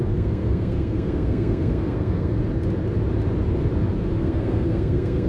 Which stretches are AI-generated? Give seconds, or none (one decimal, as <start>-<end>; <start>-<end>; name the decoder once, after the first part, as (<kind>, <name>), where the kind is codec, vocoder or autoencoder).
0.0-2.4 (codec, SNAC); 4.1-5.3